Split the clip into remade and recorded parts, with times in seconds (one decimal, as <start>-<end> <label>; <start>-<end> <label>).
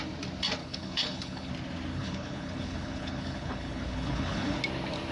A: 0.0-0.6 recorded; 0.6-1.5 remade; 1.5-1.9 recorded; 1.9-4.6 remade; 4.6-5.1 recorded